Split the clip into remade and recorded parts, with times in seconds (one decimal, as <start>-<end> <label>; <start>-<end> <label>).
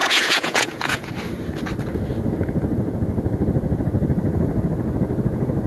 0.0-1.1 remade; 1.1-5.7 recorded